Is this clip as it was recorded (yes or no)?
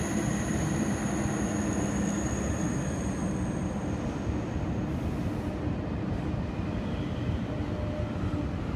yes